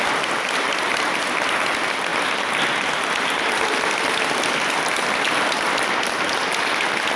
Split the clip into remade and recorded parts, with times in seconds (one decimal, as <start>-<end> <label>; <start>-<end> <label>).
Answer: 0.0-7.2 recorded